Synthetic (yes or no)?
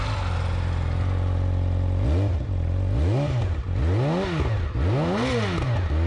no